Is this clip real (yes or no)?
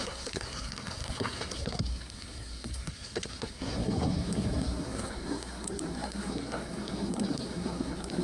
no